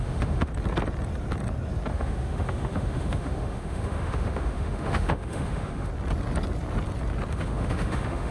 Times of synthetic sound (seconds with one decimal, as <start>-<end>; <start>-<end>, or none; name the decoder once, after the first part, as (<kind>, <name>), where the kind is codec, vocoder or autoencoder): 0.0-0.5 (autoencoder, DAC-VAE); 1.9-5.9; 7.3-8.3